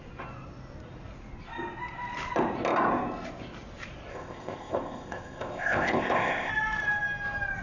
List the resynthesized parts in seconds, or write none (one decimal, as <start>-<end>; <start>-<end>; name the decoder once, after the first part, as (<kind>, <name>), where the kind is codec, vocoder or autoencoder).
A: 4.1-6.5 (codec, ZipCodec)